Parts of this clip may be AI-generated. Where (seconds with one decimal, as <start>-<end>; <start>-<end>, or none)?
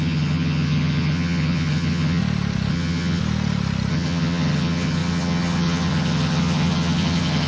0.0-2.2; 2.7-3.2; 3.9-7.5